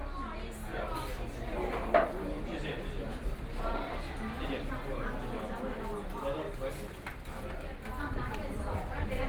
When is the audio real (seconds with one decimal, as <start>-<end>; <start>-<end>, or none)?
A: 0.0-9.3